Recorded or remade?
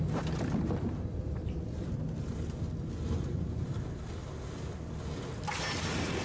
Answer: recorded